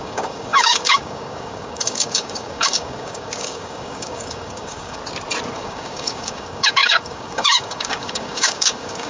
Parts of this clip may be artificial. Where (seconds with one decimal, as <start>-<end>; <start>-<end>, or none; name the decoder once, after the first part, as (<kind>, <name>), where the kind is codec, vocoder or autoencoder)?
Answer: 0.0-5.0 (codec, DAC); 5.5-9.1